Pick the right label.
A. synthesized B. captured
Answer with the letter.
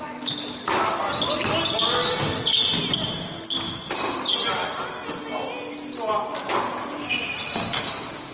B